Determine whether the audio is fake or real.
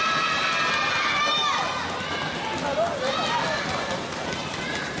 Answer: real